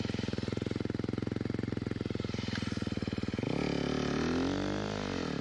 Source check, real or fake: real